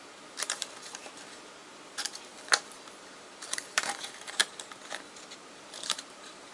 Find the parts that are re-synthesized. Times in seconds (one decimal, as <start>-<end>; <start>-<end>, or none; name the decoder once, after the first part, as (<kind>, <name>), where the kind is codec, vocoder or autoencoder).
0.0-4.4 (vocoder, BigVGAN v2); 5.5-6.5